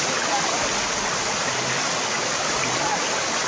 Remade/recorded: recorded